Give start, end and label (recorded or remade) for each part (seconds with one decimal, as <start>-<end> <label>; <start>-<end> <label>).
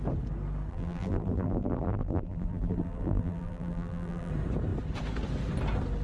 0.0-0.7 recorded; 0.7-4.3 remade; 4.3-6.0 recorded